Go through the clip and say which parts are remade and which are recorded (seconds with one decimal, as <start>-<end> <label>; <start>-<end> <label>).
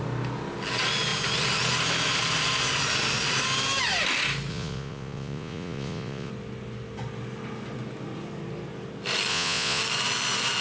0.0-4.5 recorded; 4.5-6.3 remade; 6.3-9.3 recorded; 9.3-9.8 remade; 9.8-10.6 recorded